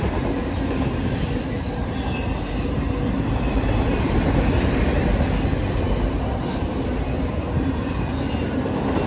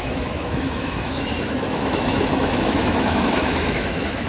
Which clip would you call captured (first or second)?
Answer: first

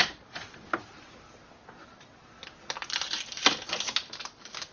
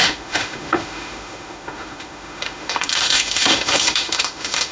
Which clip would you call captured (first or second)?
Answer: first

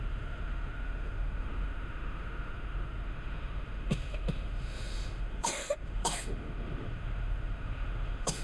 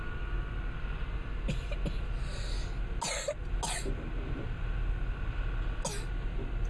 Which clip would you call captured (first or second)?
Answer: second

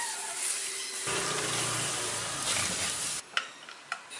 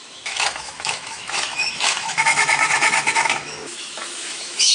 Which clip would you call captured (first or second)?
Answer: first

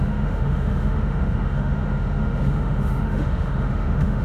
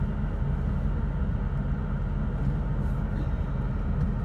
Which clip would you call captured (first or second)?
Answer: second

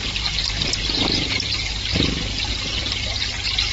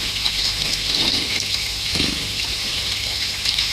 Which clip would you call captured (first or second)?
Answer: first